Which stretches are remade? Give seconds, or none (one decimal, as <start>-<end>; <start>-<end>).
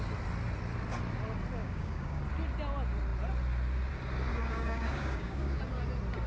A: 1.6-2.2; 4.3-5.6